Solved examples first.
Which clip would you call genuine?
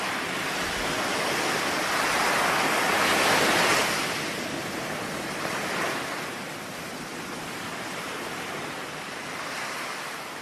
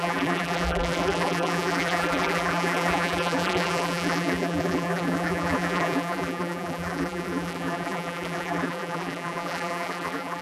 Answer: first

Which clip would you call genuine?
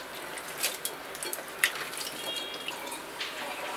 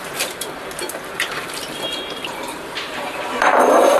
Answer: first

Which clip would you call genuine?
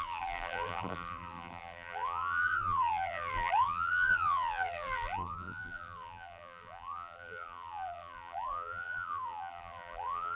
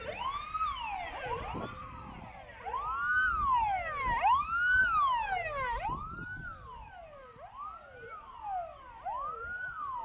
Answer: second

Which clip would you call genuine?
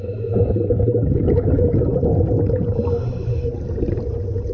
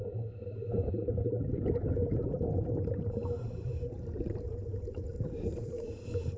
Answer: first